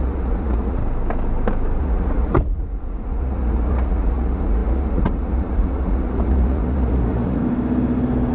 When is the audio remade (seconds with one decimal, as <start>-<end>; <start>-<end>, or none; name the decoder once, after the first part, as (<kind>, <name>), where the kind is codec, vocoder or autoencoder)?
0.0-0.8 (vocoder, Vocos); 1.8-7.4